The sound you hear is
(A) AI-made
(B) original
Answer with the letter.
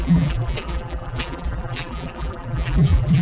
A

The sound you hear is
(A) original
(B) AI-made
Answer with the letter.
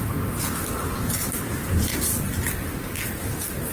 A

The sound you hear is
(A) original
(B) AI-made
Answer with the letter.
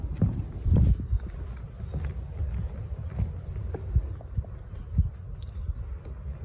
A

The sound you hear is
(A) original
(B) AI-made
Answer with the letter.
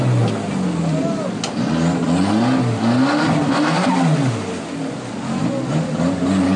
A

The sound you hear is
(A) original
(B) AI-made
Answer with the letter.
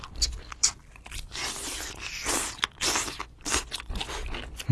B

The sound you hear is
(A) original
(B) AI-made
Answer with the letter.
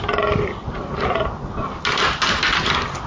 A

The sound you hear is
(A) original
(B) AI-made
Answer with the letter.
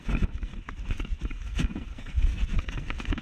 B